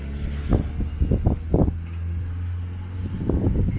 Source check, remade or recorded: recorded